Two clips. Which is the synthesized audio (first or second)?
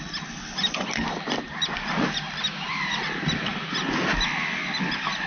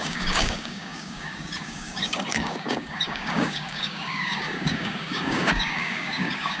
second